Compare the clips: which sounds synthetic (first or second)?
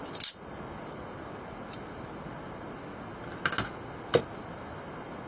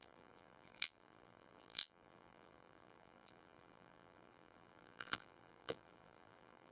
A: second